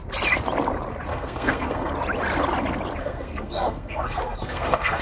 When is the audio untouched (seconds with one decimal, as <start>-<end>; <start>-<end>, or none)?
0.0-1.1; 1.9-3.0